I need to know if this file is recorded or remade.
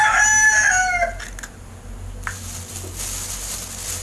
recorded